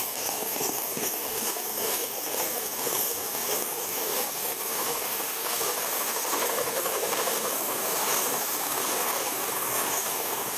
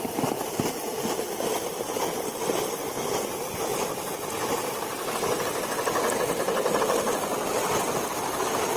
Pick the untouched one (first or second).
second